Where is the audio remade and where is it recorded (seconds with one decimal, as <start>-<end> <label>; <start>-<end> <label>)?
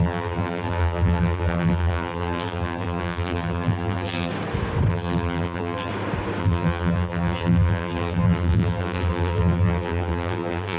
0.0-4.3 remade; 4.3-4.9 recorded; 4.9-5.9 remade; 5.9-6.4 recorded; 6.4-10.8 remade